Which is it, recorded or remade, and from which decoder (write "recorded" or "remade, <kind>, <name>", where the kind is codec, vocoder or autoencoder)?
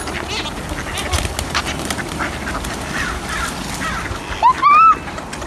recorded